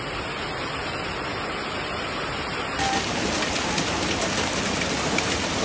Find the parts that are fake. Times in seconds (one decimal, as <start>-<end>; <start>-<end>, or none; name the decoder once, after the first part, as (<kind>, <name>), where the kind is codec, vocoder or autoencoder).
none

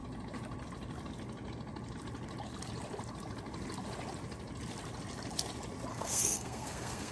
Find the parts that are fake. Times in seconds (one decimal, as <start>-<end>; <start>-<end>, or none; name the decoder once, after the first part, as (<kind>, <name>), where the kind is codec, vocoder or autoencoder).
5.9-7.1 (codec, SNAC)

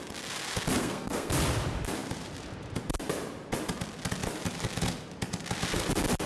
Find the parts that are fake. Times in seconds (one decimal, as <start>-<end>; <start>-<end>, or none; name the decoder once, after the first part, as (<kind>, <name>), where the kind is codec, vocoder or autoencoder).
0.8-1.3 (codec, SNAC)

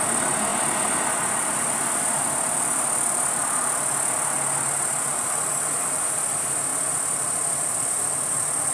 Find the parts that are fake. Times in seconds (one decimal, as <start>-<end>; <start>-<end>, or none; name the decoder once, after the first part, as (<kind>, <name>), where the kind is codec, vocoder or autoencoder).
none

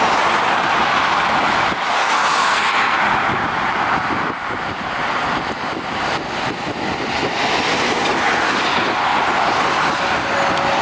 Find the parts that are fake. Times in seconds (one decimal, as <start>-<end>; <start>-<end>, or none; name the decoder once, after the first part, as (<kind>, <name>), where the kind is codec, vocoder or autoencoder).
2.0-3.0 (codec, SNAC)

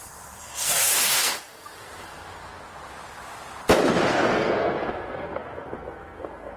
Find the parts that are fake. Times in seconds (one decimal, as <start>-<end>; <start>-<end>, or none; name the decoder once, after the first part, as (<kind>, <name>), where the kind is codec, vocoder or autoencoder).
0.0-2.7 (codec, SNAC); 4.1-6.6

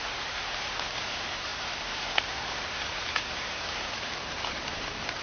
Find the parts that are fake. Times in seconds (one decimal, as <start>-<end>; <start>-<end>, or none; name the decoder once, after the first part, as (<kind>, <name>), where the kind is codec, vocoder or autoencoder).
none

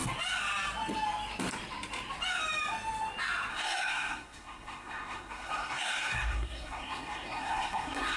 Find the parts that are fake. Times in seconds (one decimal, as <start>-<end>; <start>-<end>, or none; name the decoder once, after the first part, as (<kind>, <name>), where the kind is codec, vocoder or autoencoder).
3.5-8.2 (codec, SNAC)